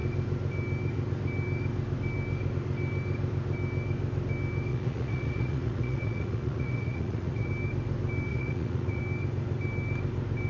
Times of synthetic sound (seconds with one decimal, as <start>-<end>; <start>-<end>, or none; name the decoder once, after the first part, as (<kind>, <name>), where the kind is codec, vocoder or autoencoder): 4.7-7.5 (vocoder, Vocos); 8.3-9.0